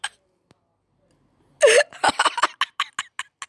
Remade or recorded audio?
recorded